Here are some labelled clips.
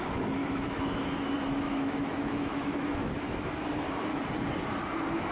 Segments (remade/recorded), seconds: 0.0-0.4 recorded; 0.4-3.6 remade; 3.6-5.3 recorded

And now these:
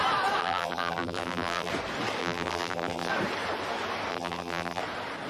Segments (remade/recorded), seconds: 0.0-0.4 recorded; 0.4-1.7 remade; 1.7-2.2 recorded; 2.2-3.1 remade; 3.1-4.1 recorded; 4.1-4.8 remade; 4.8-5.3 recorded

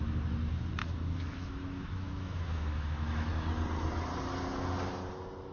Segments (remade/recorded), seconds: 0.0-0.8 recorded; 0.8-3.3 remade; 3.3-5.5 recorded

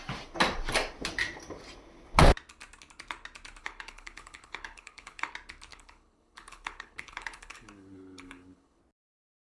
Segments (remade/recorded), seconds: 0.0-3.6 recorded; 3.6-5.3 remade; 5.3-5.7 recorded; 5.7-8.8 remade; 8.8-9.4 recorded

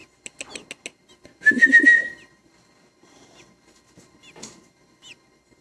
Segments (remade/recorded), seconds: 0.0-5.6 recorded

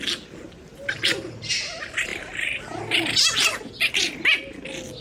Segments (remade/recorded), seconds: 0.0-5.0 recorded

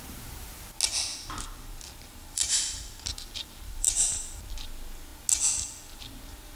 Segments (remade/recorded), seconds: 0.0-1.1 recorded; 1.1-4.5 remade; 4.5-6.6 recorded